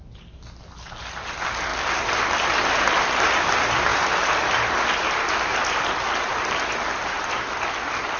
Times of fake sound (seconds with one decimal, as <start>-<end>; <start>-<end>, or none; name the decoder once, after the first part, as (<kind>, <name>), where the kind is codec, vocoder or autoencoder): none